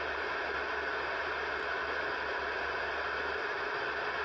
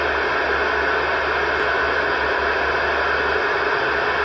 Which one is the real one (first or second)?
second